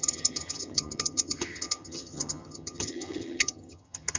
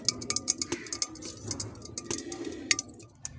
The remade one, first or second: first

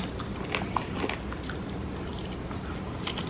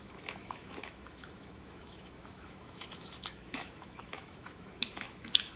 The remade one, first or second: second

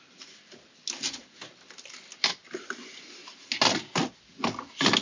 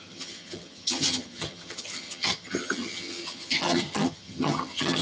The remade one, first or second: second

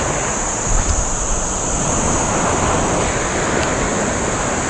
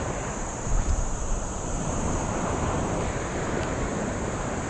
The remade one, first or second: second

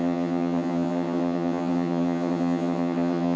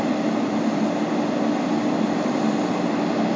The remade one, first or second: first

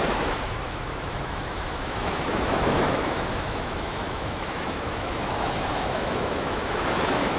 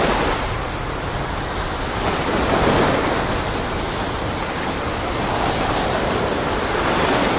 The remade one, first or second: first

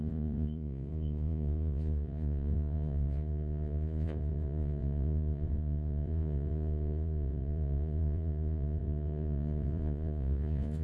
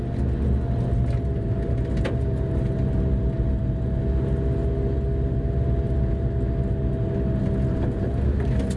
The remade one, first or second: first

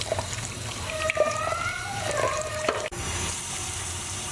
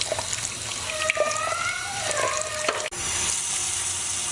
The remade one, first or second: first